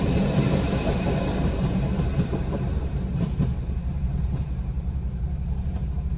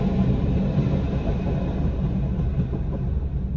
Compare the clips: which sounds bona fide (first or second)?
second